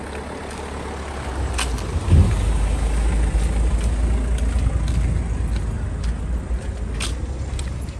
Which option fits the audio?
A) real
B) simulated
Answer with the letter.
A